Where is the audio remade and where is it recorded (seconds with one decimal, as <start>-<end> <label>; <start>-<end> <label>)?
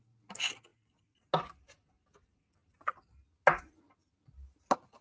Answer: 0.0-5.0 recorded